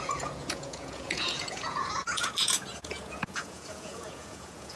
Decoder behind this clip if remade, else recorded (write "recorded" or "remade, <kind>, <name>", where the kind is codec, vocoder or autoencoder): remade, vocoder, Vocos